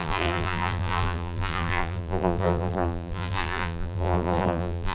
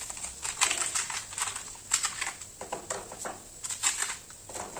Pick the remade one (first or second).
first